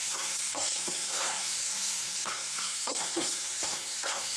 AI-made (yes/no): yes